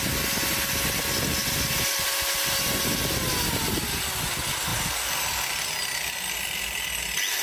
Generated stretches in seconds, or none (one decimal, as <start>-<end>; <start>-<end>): 1.4-2.7